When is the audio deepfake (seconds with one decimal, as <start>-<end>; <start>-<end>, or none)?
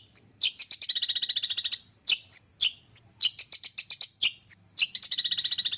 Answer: none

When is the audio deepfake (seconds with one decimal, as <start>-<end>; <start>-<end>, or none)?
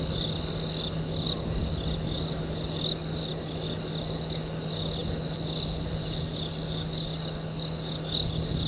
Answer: none